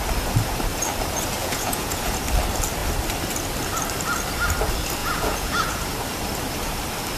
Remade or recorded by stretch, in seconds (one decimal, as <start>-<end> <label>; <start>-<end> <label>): 0.0-1.4 recorded; 1.4-2.2 remade; 2.2-5.0 recorded; 5.0-5.8 remade; 5.8-7.2 recorded